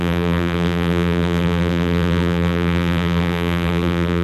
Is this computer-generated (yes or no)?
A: yes